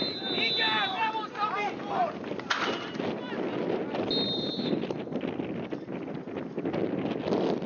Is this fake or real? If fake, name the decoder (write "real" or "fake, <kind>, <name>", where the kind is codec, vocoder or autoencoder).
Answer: real